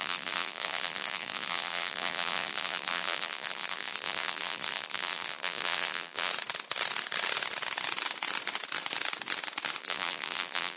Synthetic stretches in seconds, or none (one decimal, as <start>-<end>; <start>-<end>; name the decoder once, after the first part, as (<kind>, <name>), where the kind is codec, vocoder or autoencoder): 0.0-6.3 (vocoder, BigVGAN v2); 9.8-10.8